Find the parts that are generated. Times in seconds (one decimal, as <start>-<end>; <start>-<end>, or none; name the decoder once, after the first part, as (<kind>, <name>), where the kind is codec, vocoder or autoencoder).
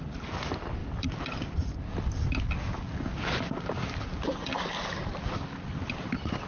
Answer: none